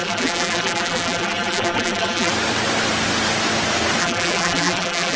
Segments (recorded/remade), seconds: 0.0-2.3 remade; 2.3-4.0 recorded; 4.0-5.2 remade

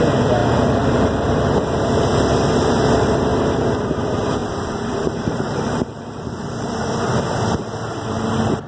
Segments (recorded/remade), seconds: 0.0-4.4 recorded; 4.4-7.2 remade; 7.2-8.7 recorded

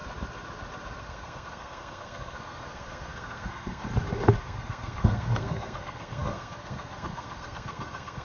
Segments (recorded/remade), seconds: 0.0-1.0 recorded; 1.0-3.8 remade; 3.8-4.4 recorded; 4.4-8.2 remade

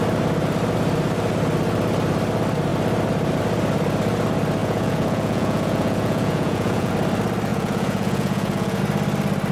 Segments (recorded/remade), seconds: 0.0-4.6 recorded; 4.6-6.9 remade; 6.9-7.5 recorded; 7.5-8.8 remade; 8.8-9.5 recorded

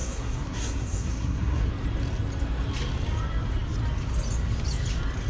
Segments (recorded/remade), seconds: 0.0-1.7 remade; 1.7-5.3 recorded